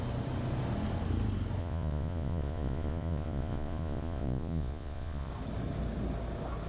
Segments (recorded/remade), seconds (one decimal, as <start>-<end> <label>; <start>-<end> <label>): 0.0-1.6 recorded; 1.6-5.3 remade; 5.3-6.7 recorded